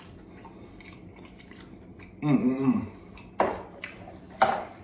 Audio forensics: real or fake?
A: fake